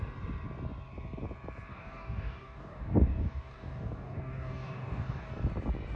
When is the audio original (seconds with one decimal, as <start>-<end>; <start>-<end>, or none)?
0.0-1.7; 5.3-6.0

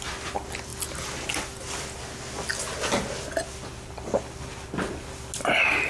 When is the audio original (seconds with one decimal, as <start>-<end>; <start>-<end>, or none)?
0.0-5.9

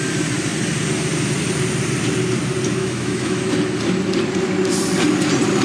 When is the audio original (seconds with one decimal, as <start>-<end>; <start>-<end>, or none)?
0.0-2.8; 3.4-5.6